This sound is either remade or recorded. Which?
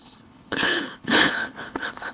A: remade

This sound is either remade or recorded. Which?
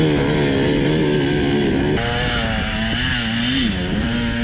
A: recorded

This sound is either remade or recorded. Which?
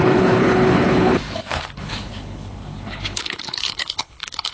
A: remade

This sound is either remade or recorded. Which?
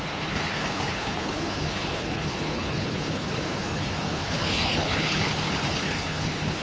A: remade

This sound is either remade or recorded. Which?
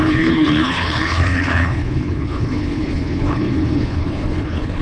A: remade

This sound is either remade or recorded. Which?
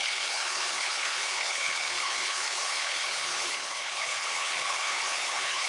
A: remade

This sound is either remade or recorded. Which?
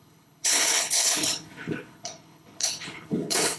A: remade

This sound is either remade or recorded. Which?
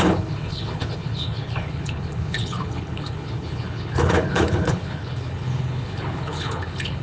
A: remade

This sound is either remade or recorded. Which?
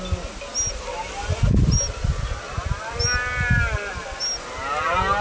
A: recorded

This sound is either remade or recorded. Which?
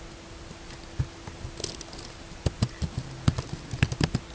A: recorded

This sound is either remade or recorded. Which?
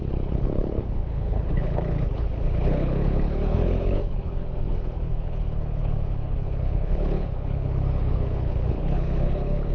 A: remade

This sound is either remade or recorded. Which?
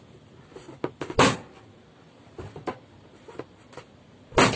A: recorded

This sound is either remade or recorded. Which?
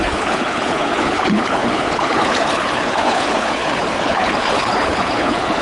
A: remade